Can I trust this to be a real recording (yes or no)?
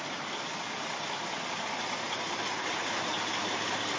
yes